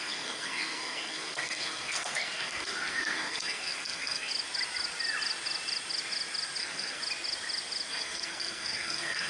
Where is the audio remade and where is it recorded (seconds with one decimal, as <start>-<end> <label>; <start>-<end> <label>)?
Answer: 0.0-4.3 remade; 4.3-6.6 recorded; 6.6-7.0 remade; 7.0-7.9 recorded; 7.9-9.3 remade

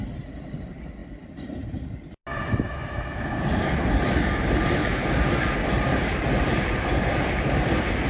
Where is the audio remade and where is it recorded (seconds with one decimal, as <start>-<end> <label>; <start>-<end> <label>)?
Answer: 0.0-2.2 remade; 2.2-3.2 recorded; 3.2-8.1 remade

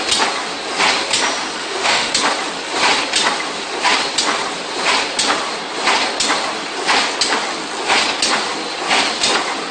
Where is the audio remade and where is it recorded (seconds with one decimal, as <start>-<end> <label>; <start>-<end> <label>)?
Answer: 0.0-1.6 recorded; 1.6-2.1 remade; 2.1-9.7 recorded

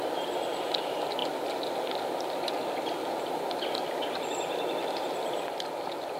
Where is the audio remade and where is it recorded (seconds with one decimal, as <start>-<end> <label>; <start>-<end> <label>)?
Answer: 0.0-6.2 recorded

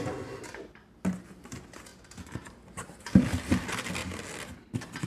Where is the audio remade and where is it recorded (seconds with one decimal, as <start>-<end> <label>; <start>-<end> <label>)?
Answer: 0.0-1.9 recorded; 1.9-3.0 remade; 3.0-5.1 recorded